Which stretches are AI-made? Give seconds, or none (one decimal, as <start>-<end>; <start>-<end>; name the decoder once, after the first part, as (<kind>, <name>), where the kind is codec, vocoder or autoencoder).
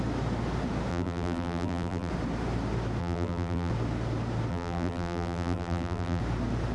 0.9-2.1 (vocoder, BigVGAN v2); 3.0-3.7; 4.5-6.2